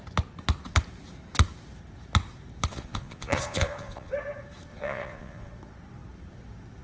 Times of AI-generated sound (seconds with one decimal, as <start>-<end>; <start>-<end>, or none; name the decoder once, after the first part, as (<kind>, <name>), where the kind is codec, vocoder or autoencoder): 2.7-4.1 (vocoder, Vocos); 4.7-5.5